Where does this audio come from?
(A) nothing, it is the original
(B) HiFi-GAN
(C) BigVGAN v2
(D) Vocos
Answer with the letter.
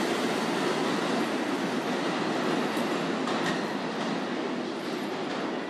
A